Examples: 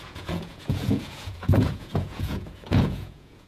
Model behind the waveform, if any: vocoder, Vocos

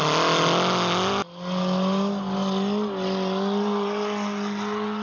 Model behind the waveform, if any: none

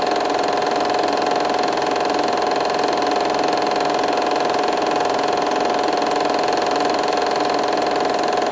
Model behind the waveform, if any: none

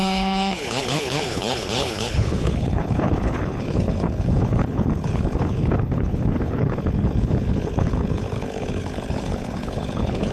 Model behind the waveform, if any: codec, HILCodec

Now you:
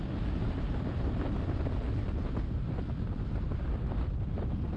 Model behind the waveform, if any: none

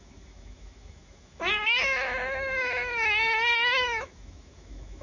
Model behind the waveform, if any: autoencoder, DAC-VAE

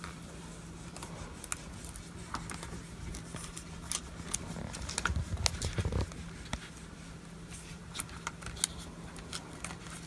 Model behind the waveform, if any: none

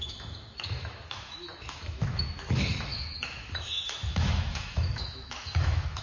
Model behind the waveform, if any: autoencoder, DAC-VAE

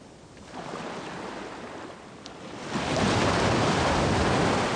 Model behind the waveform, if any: none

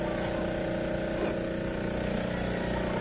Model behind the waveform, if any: none